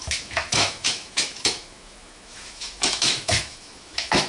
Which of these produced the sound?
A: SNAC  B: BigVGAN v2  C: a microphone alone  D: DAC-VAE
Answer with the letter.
D